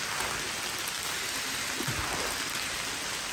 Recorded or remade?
recorded